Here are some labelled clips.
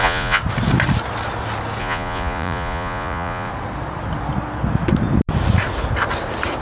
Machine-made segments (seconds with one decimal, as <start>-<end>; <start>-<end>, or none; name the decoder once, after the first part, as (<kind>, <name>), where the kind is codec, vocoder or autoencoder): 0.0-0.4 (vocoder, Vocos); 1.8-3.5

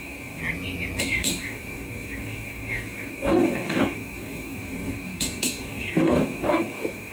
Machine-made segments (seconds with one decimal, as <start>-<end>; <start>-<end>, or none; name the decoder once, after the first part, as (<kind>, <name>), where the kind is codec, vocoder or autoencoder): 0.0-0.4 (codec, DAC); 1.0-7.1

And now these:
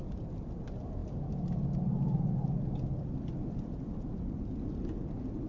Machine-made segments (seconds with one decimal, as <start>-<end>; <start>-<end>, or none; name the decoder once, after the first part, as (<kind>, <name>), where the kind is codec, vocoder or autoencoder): none